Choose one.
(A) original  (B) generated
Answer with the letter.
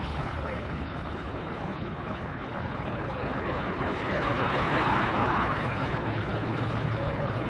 B